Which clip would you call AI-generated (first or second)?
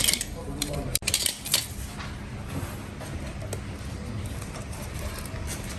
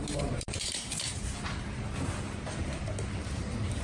second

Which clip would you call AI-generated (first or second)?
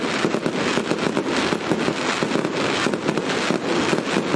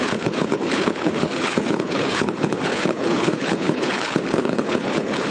second